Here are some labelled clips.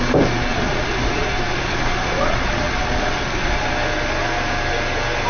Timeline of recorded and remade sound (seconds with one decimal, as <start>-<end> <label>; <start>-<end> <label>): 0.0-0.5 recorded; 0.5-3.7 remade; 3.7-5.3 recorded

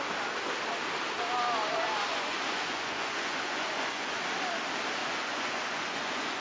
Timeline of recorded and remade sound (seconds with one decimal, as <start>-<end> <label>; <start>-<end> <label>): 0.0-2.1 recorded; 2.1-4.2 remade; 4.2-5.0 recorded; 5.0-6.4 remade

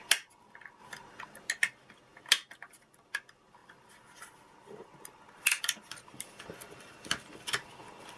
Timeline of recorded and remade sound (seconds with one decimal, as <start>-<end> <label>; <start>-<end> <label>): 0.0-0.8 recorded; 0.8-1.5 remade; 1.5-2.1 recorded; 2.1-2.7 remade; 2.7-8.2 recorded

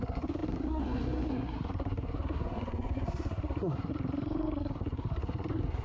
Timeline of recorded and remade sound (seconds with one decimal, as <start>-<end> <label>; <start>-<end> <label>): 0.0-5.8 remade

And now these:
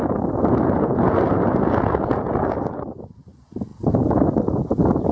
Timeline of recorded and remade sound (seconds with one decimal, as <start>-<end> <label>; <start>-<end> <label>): 0.0-5.1 recorded

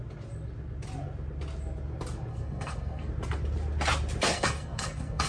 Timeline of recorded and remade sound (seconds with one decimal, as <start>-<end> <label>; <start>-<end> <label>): 0.0-2.3 recorded; 2.3-3.1 remade; 3.1-4.3 recorded; 4.3-5.3 remade